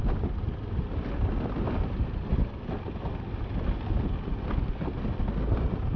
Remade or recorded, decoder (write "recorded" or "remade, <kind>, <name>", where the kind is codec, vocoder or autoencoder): recorded